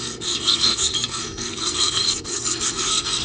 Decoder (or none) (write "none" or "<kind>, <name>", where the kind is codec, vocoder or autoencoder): codec, SNAC